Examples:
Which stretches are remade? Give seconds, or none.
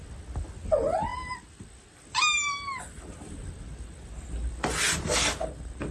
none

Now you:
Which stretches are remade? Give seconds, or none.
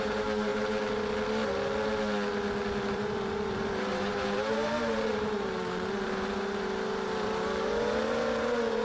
0.0-0.5; 2.9-8.8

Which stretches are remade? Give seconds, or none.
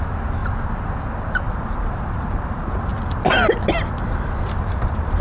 0.0-0.4; 1.3-2.9; 4.5-5.2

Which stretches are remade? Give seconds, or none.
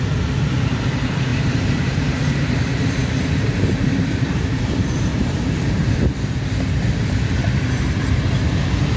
1.3-6.3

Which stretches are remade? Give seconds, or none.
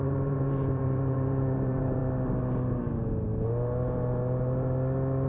0.0-2.0